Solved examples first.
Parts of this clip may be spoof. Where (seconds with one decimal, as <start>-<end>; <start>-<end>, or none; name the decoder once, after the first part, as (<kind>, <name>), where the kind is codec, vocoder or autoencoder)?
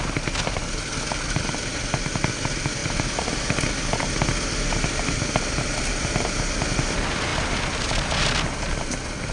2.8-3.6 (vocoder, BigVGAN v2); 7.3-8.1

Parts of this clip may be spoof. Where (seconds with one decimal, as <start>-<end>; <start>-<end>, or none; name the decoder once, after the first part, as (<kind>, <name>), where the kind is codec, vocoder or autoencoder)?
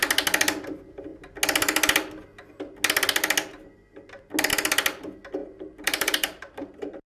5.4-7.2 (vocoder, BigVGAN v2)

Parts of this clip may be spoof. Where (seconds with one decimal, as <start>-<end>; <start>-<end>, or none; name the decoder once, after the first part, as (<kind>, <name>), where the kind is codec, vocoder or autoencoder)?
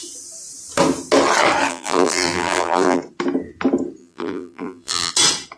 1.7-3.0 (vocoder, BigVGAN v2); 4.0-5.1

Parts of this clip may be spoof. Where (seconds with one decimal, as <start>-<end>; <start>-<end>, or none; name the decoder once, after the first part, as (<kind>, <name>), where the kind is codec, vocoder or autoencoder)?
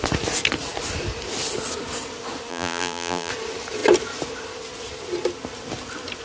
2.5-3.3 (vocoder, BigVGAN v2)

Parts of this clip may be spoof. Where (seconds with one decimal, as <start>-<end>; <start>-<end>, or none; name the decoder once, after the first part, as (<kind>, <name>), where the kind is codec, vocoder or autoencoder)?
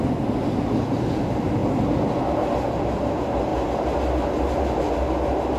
none